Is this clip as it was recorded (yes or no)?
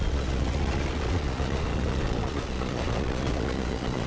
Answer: no